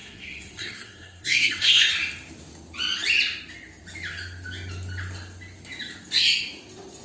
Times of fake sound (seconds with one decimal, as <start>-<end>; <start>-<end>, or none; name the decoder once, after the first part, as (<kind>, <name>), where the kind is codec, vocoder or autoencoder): 0.0-1.9 (codec, SNAC)